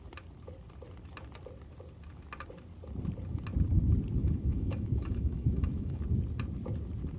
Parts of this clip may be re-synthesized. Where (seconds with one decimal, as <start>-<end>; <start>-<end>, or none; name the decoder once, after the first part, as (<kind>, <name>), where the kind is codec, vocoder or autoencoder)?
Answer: 4.2-6.0 (autoencoder, DAC-VAE)